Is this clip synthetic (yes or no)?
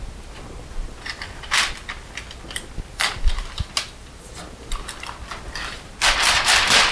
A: no